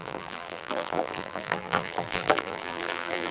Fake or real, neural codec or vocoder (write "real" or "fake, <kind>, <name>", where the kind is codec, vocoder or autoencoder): fake, vocoder, BigVGAN v2